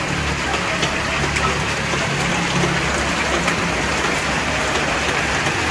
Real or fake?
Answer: real